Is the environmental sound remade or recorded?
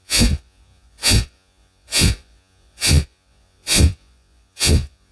remade